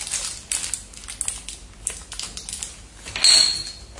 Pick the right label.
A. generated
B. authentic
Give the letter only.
B